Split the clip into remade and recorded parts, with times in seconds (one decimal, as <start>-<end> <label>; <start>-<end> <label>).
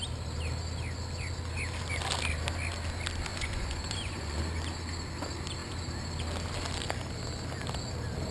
0.0-3.3 recorded; 3.3-4.4 remade; 4.4-8.3 recorded